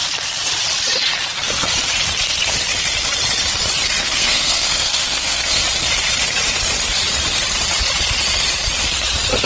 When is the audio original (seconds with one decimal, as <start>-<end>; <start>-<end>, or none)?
0.0-4.0; 5.6-9.5